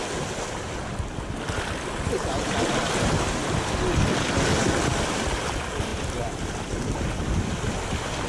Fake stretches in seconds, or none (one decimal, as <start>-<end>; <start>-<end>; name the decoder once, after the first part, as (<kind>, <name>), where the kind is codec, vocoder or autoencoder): 3.4-4.4 (vocoder, BigVGAN v2); 5.9-6.6